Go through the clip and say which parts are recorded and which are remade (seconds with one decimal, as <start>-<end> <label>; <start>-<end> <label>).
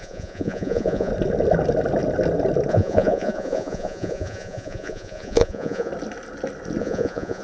0.0-1.1 remade; 1.1-2.7 recorded; 2.7-5.9 remade; 5.9-6.8 recorded; 6.8-7.4 remade